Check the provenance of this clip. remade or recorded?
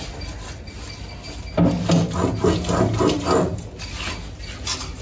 recorded